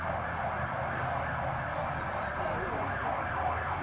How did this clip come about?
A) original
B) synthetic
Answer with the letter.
A